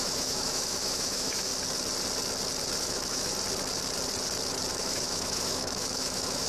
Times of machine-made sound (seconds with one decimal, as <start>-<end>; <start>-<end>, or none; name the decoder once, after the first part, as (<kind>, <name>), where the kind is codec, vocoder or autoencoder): 0.0-1.5 (autoencoder, DAC-VAE); 2.8-3.3; 4.7-6.5